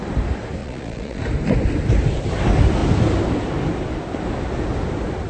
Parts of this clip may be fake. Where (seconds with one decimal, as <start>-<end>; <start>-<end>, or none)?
0.6-1.2